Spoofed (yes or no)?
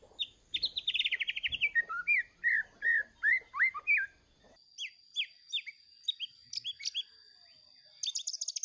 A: no